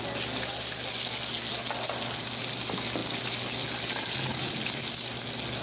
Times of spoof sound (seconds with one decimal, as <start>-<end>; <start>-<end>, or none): none